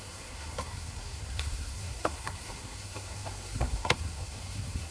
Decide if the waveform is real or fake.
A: fake